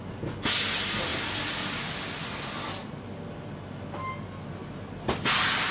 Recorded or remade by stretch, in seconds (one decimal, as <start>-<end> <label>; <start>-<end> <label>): 0.0-5.7 recorded